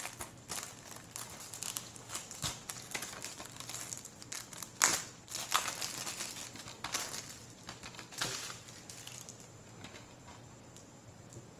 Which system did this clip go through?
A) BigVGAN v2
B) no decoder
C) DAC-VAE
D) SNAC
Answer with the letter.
B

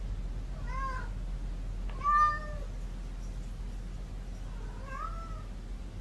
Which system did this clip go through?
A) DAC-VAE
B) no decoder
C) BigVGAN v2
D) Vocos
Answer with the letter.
B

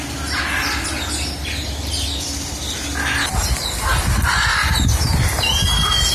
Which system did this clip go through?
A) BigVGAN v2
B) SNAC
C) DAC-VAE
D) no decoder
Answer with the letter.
D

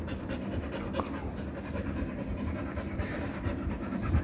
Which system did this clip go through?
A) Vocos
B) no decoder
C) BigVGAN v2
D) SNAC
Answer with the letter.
B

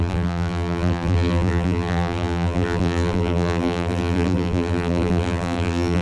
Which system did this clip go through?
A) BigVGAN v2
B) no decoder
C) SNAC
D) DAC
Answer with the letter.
A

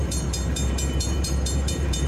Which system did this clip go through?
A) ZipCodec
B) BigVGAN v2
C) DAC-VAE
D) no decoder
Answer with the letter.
B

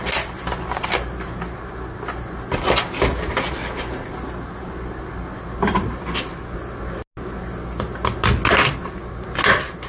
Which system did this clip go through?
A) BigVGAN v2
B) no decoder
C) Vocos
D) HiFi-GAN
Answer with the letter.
B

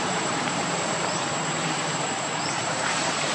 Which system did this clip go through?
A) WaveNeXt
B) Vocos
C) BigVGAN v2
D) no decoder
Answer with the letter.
C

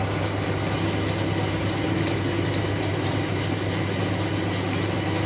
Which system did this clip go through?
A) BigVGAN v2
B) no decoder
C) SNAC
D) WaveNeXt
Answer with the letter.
B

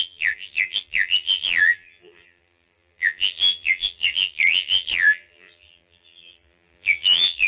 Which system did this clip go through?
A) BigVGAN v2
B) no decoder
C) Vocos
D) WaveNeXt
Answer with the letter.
A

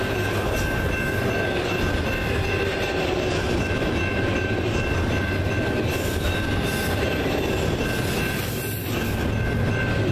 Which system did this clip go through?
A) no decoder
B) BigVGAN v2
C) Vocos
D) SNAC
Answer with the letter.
A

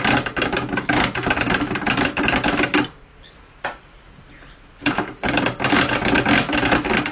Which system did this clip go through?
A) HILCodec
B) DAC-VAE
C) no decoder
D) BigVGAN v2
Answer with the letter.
C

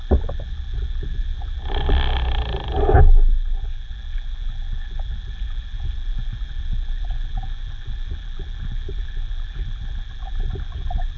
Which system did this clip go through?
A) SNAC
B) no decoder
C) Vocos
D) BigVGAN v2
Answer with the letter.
B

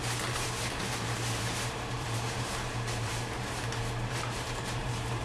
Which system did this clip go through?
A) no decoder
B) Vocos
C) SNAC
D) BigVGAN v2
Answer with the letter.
D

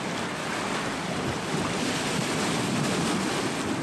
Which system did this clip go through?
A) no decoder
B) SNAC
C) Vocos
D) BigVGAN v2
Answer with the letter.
A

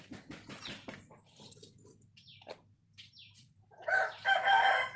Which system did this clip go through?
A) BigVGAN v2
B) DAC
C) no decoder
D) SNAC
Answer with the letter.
C